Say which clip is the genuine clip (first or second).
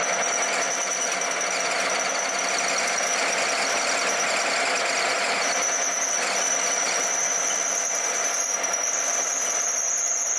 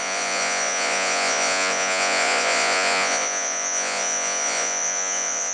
first